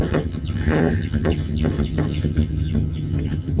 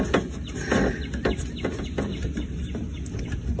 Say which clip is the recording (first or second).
second